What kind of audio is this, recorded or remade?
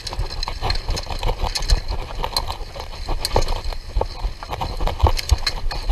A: recorded